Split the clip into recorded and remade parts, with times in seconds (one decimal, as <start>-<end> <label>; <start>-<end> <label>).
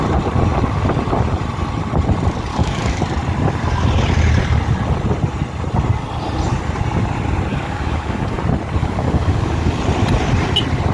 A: 0.0-2.5 recorded; 2.5-3.0 remade; 3.0-7.5 recorded; 7.5-8.4 remade; 8.4-8.8 recorded; 8.8-9.8 remade; 9.8-10.9 recorded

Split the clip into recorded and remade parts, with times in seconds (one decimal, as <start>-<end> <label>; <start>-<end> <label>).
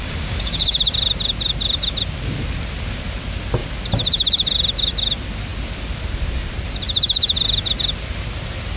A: 0.0-0.8 remade; 0.8-8.8 recorded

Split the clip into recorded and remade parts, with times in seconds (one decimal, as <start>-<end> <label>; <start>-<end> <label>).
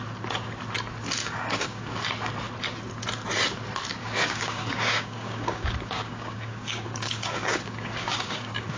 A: 0.0-1.2 recorded; 1.2-2.0 remade; 2.0-4.0 recorded; 4.0-8.8 remade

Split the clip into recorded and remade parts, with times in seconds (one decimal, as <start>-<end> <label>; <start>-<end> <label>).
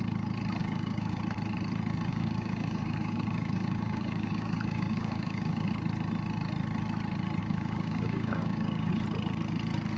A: 0.0-0.6 recorded; 0.6-1.2 remade; 1.2-2.1 recorded; 2.1-5.7 remade; 5.7-7.4 recorded; 7.4-8.9 remade; 8.9-10.0 recorded